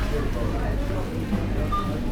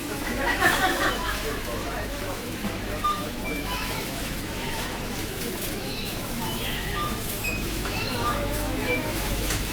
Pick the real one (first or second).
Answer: first